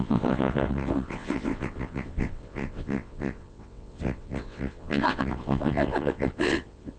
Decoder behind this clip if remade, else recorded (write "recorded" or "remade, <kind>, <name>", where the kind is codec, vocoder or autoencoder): remade, vocoder, WaveNeXt